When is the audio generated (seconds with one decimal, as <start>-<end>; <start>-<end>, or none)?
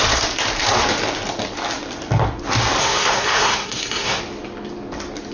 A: 2.8-4.2